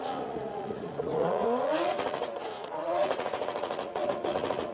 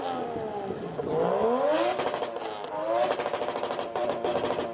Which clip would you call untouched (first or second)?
second